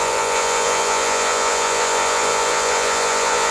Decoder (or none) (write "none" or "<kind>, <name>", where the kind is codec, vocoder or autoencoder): vocoder, Vocos